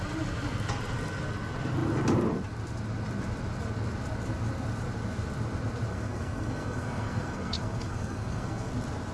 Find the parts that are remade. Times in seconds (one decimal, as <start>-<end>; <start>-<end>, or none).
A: 5.9-8.7